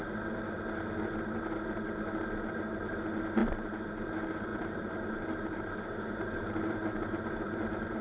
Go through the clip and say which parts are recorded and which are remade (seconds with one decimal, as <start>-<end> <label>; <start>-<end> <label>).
0.0-4.5 recorded; 4.5-8.0 remade